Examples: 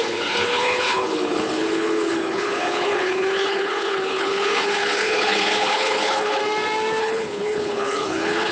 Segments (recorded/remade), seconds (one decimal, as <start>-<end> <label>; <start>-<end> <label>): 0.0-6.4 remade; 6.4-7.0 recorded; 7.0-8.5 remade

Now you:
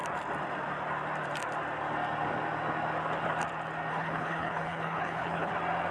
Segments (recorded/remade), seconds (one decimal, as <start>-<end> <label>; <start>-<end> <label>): 0.0-3.9 recorded; 3.9-5.5 remade; 5.5-5.9 recorded

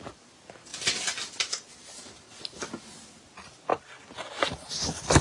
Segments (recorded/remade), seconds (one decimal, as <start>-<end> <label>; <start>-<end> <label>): 0.0-5.2 recorded

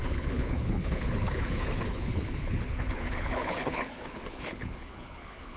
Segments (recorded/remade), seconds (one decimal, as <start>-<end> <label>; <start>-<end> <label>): 0.0-5.6 remade